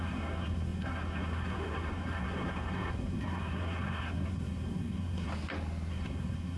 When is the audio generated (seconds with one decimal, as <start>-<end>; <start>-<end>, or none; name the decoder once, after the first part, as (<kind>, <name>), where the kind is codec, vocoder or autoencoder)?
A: 0.0-5.3 (codec, SNAC); 5.9-6.6